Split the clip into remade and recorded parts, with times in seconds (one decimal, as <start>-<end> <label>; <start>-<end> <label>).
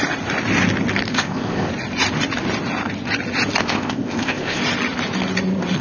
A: 0.0-1.1 recorded; 1.1-1.7 remade; 1.7-3.6 recorded; 3.6-4.6 remade; 4.6-5.8 recorded